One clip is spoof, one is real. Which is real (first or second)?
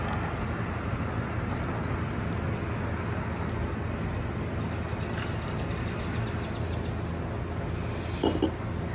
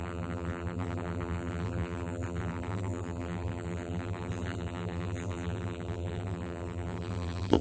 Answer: first